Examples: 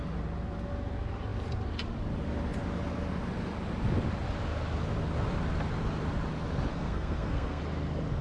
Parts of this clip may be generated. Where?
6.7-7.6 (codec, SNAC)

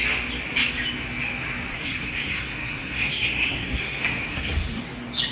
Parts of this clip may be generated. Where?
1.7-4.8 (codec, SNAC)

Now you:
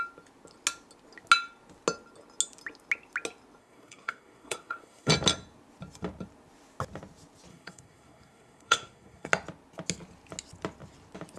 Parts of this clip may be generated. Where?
3.6-5.1 (codec, SNAC); 7.5-9.3

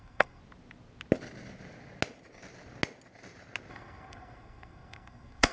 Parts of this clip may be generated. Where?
0.0-0.4 (codec, SNAC); 3.7-5.5

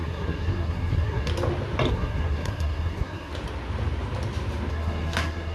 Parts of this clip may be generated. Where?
0.0-1.3 (codec, SNAC); 1.9-3.3; 4.7-5.5

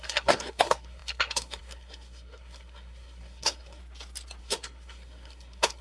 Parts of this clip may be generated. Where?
0.0-3.8 (codec, SNAC); 4.4-5.8

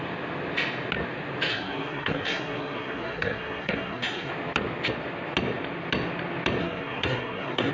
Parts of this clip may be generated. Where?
1.5-4.3 (codec, SNAC); 6.6-7.7